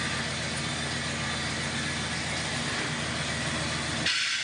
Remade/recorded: recorded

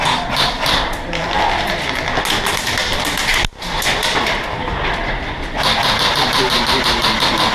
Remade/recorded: recorded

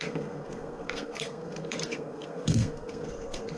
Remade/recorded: remade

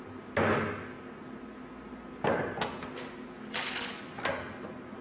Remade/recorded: recorded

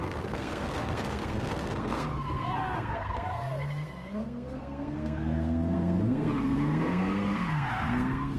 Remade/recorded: remade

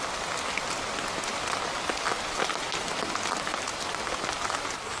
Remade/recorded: recorded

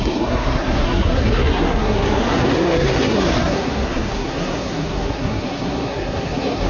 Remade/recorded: remade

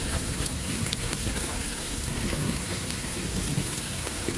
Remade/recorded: remade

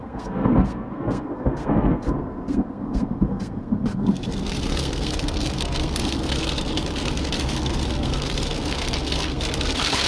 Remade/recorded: remade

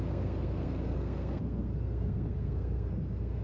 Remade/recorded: remade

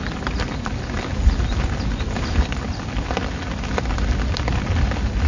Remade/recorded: recorded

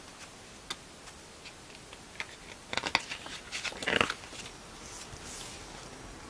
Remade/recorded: recorded